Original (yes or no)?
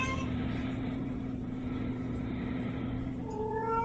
no